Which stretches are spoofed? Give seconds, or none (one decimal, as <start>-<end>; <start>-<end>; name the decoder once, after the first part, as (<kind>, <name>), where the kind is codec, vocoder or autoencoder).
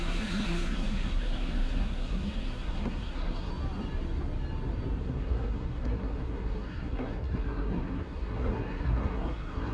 0.0-3.5 (codec, SNAC); 5.0-9.7